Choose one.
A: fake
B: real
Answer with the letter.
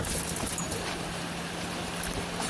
B